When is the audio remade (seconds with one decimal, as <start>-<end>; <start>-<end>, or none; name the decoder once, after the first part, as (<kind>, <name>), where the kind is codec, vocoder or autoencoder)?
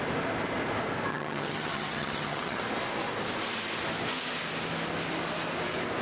1.1-2.6 (vocoder, HiFi-GAN)